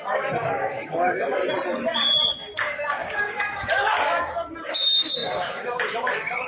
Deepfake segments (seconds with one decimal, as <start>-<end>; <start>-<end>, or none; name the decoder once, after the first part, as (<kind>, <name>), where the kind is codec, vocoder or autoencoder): 0.0-1.4 (codec, DAC); 2.3-6.5